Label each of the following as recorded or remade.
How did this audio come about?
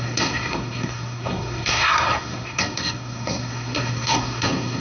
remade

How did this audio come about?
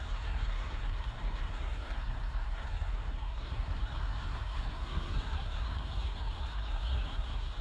remade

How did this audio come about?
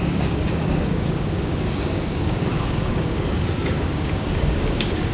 remade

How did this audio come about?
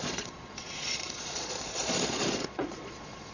remade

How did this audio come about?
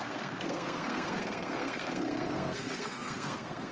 remade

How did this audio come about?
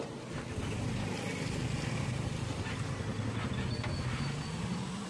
recorded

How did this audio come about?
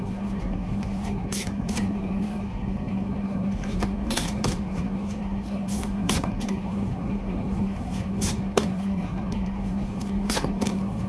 remade